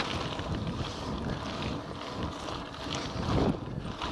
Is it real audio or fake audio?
real